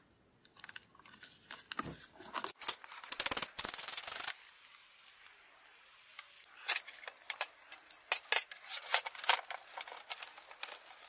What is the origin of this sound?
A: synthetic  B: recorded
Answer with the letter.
B